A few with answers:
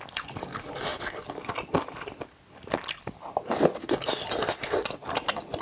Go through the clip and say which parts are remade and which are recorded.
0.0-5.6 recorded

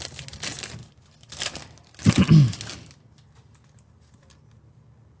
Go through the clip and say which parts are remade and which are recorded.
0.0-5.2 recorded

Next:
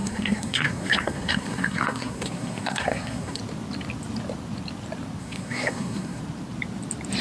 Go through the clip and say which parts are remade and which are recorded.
0.0-3.4 remade; 3.4-5.2 recorded; 5.2-6.2 remade; 6.2-7.2 recorded

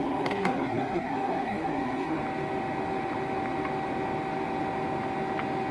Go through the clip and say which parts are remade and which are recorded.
0.0-2.2 remade; 2.2-5.7 recorded

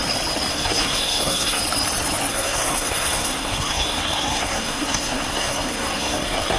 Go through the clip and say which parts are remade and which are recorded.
0.0-0.5 recorded; 0.5-1.6 remade; 1.6-2.3 recorded; 2.3-6.6 remade

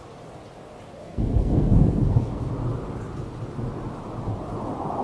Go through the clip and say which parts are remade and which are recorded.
0.0-1.0 recorded; 1.0-2.5 remade; 2.5-5.0 recorded

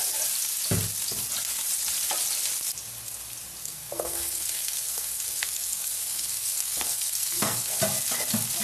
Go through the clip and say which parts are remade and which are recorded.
0.0-3.6 recorded; 3.6-7.8 remade; 7.8-8.6 recorded